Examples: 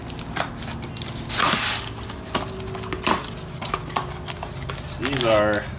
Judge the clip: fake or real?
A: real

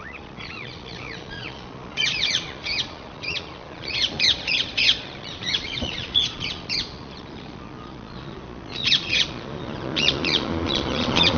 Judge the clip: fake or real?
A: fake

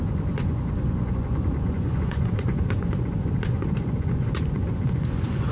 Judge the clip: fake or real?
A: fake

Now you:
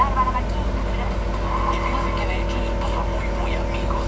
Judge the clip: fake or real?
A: real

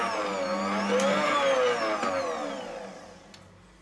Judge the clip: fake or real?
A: real